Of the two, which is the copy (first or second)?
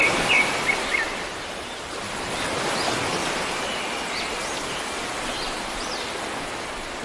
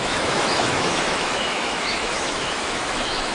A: second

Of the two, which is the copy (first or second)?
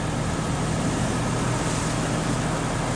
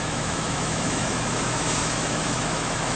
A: second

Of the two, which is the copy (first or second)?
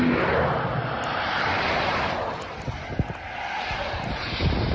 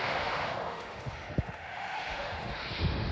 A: second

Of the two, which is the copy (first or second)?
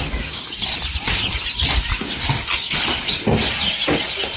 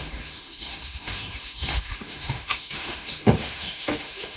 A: second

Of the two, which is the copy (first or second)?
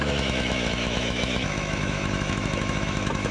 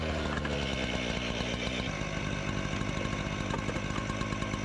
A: first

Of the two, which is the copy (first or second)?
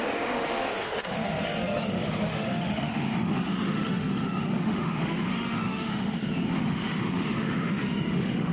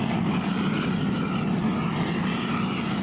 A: first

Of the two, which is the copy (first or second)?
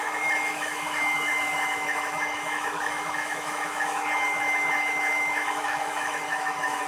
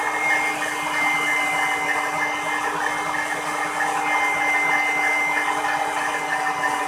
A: first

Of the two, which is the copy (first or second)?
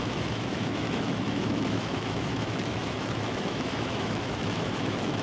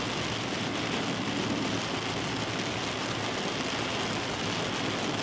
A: first